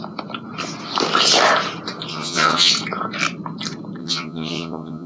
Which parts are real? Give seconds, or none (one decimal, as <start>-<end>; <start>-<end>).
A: 0.0-2.1; 2.7-4.0